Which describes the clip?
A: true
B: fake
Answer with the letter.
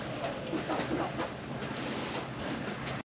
A